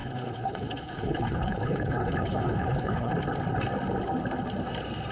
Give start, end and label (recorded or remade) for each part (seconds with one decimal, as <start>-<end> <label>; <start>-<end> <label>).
0.0-3.1 remade; 3.1-5.1 recorded